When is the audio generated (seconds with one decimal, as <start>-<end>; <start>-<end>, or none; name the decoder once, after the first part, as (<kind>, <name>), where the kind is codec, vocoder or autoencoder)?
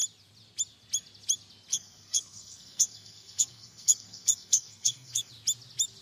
1.7-5.3 (codec, SNAC)